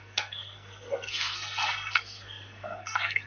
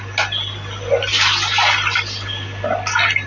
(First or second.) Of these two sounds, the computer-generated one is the first